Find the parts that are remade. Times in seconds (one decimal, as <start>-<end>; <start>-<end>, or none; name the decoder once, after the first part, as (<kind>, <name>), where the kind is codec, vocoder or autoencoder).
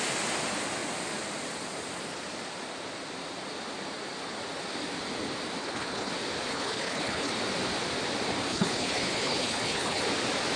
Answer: 5.6-6.1 (codec, HILCodec); 6.5-7.3; 8.5-10.0